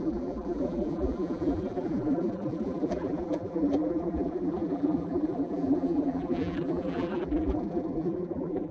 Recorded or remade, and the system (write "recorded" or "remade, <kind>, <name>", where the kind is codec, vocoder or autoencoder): remade, vocoder, BigVGAN v2